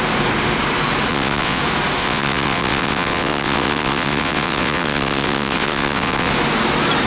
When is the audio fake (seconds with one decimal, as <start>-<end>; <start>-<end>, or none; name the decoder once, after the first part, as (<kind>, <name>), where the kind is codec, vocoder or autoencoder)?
1.1-1.6 (vocoder, WaveNeXt); 2.0-6.3